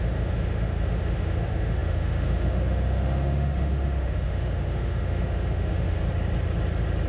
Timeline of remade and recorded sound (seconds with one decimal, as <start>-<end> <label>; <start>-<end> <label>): 0.0-6.0 remade; 6.0-7.1 recorded